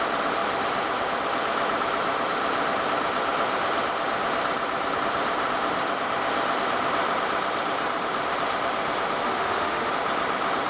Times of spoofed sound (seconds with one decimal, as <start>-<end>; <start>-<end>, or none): 9.2-9.9